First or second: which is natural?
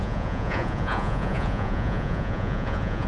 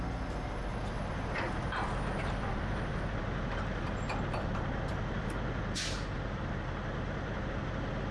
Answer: second